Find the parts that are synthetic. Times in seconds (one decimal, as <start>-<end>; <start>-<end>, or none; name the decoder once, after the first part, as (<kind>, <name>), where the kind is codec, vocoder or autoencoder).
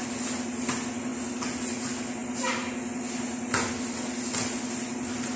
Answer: none